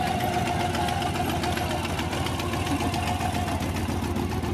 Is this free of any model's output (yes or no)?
yes